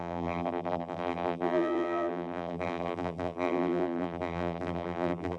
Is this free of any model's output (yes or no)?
no